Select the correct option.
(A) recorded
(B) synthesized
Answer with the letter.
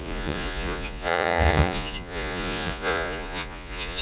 B